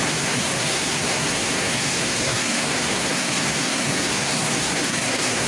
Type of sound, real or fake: fake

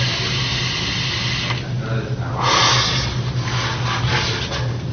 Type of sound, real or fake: real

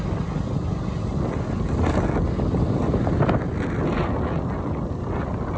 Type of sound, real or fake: real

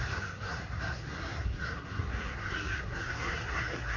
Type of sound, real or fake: fake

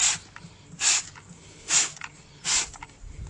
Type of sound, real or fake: real